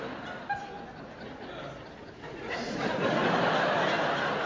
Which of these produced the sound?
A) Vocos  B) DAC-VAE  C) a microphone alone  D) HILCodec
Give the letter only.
C